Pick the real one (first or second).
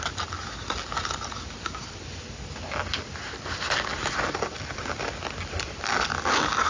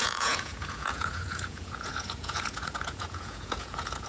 first